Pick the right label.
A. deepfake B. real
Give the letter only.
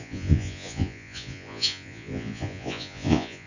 A